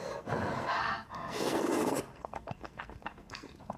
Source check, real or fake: fake